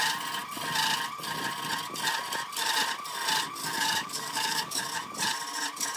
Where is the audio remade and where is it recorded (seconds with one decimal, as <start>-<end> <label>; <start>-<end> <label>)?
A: 0.0-3.6 recorded; 3.6-4.9 remade; 4.9-6.0 recorded